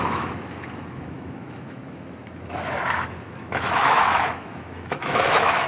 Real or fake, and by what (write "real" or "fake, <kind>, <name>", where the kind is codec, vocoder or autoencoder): fake, autoencoder, DAC-VAE